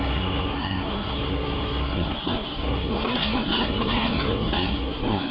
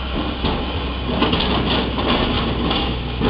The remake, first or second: first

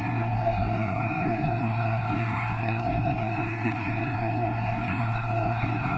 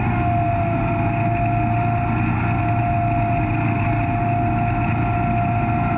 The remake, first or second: first